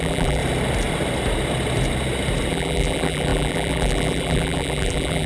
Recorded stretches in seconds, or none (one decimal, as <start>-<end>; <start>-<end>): 0.4-2.5